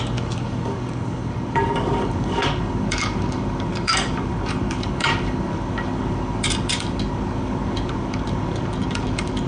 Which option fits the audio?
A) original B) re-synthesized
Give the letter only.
B